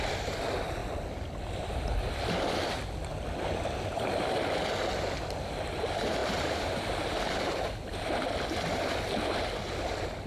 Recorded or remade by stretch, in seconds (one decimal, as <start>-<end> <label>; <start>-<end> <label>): 0.0-6.2 recorded; 6.2-6.9 remade; 6.9-10.3 recorded